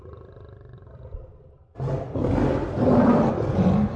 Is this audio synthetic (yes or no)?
no